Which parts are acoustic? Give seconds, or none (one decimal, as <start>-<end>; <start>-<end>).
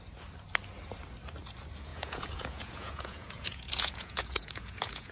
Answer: 0.0-1.9